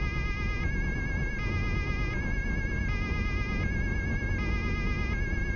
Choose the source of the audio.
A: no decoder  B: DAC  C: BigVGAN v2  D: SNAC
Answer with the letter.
A